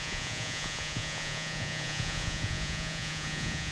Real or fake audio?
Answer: fake